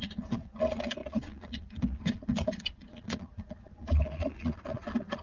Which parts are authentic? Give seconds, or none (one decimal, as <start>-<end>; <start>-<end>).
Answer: none